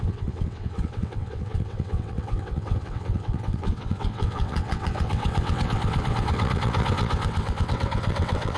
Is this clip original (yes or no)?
no